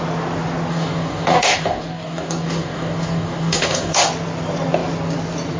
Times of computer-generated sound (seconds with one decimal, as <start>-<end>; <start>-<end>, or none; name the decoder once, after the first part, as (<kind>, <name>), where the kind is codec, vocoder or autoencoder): 0.7-4.1 (codec, DAC)